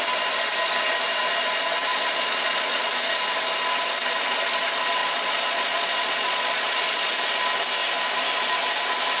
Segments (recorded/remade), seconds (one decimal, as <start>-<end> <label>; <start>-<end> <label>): 0.0-1.9 recorded; 1.9-2.9 remade; 2.9-5.0 recorded; 5.0-7.1 remade; 7.1-9.2 recorded